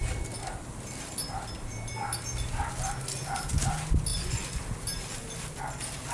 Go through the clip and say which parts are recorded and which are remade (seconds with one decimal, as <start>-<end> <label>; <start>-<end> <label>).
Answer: 0.0-4.1 recorded; 4.1-4.6 remade; 4.6-6.1 recorded